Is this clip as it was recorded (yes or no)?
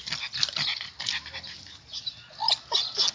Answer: yes